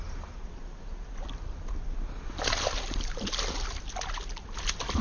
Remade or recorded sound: recorded